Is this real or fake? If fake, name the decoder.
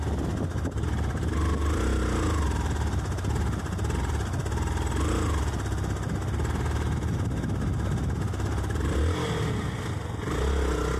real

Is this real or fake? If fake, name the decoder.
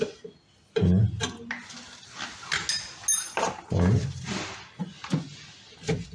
real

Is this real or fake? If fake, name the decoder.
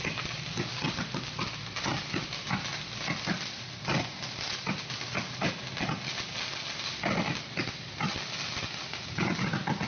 real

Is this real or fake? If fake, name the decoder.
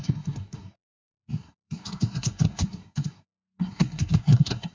fake, codec, SNAC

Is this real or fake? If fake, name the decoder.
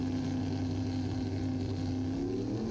real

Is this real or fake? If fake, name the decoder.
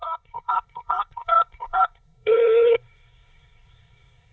fake, codec, SNAC